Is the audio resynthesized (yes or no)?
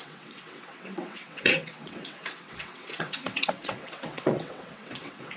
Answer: yes